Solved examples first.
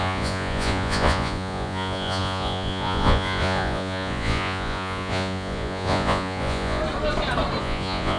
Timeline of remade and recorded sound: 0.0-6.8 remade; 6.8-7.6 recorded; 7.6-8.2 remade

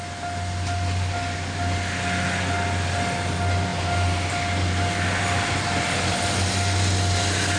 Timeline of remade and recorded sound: 0.0-7.6 recorded